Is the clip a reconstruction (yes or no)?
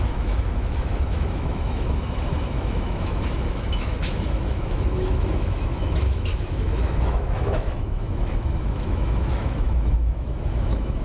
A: yes